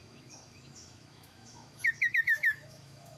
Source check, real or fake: fake